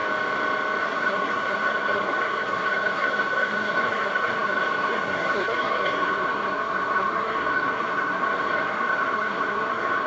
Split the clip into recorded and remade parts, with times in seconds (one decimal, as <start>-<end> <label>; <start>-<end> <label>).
0.0-0.8 recorded; 0.8-10.1 remade

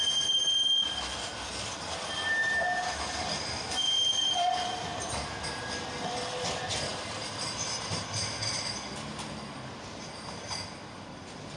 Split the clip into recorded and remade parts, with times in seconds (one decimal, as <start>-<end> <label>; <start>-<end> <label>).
0.0-11.6 recorded

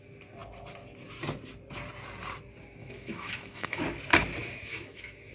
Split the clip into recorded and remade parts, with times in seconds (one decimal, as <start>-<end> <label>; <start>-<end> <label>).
0.0-2.8 recorded; 2.8-3.8 remade; 3.8-4.4 recorded; 4.4-5.3 remade

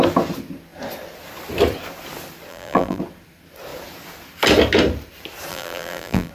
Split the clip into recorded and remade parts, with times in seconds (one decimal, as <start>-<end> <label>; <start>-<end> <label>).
0.0-2.5 recorded; 2.5-3.0 remade; 3.0-5.5 recorded; 5.5-6.3 remade

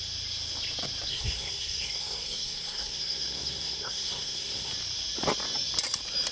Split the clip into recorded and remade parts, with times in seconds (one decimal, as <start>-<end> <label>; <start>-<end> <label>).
0.0-1.1 recorded; 1.1-4.7 remade; 4.7-6.3 recorded

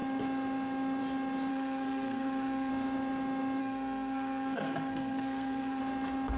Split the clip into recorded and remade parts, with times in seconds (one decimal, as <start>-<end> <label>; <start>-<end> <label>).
0.0-1.5 recorded; 1.5-2.7 remade; 2.7-3.6 recorded; 3.6-5.8 remade; 5.8-6.4 recorded

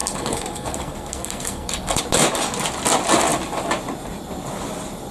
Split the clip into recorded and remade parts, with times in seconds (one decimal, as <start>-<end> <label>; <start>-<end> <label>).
0.0-2.0 remade; 2.0-5.1 recorded

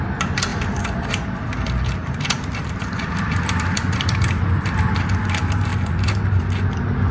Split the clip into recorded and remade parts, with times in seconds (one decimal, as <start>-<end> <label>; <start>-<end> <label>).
0.0-0.5 recorded; 0.5-4.8 remade; 4.8-7.1 recorded